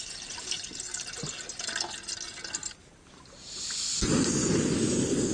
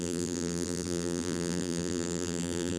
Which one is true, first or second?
first